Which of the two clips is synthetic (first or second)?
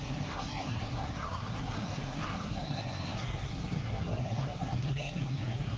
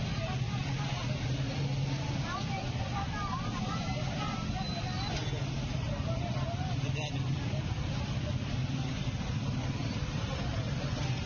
first